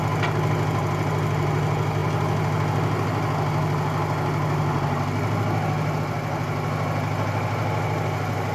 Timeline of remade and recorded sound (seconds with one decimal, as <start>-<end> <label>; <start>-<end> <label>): 0.0-8.5 recorded